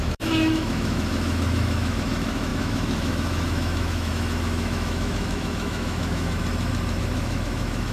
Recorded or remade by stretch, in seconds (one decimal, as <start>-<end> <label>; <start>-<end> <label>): 0.0-6.4 remade; 6.4-7.0 recorded; 7.0-7.9 remade